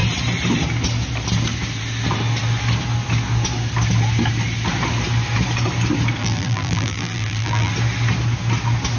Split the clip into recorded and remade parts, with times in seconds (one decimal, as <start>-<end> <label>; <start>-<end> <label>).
0.0-6.2 recorded; 6.2-7.7 remade; 7.7-9.0 recorded